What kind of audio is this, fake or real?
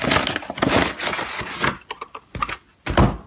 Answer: real